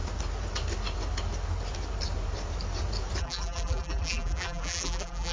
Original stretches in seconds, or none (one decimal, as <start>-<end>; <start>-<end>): 0.0-3.2